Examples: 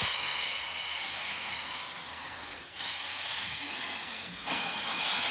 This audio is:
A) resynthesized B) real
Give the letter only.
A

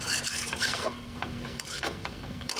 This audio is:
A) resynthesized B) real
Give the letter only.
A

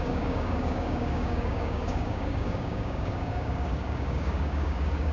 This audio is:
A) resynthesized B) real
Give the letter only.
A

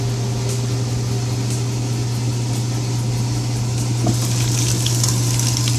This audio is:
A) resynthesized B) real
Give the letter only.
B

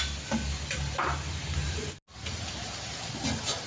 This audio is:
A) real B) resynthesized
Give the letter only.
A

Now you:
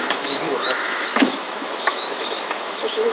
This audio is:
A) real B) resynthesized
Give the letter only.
B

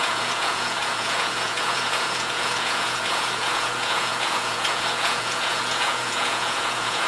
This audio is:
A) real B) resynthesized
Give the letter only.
B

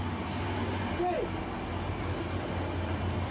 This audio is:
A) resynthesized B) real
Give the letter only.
B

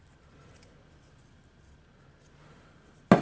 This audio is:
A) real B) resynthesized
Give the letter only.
A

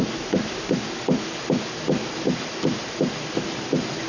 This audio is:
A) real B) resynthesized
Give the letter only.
A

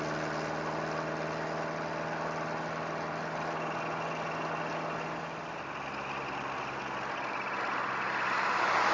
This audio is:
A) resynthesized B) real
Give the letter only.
B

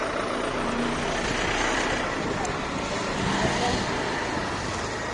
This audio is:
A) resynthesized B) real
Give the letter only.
B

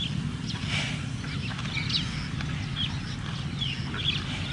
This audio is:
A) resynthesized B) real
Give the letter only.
B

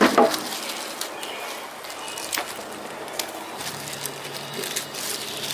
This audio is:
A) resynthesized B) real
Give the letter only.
B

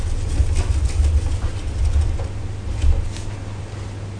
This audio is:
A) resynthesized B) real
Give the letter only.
B